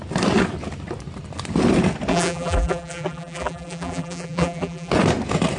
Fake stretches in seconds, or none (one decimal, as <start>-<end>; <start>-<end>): 2.1-4.9